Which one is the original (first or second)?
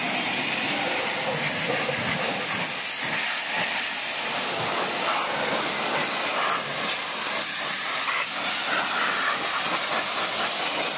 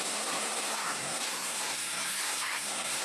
first